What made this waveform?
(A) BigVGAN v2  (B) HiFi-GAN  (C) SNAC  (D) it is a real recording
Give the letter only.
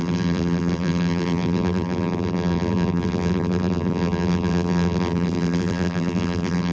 A